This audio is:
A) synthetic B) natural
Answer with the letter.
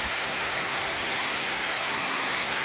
A